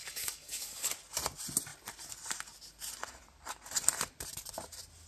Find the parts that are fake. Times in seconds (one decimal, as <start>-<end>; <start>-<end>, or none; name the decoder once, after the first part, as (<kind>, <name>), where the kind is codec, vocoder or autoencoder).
0.0-0.9 (codec, DAC)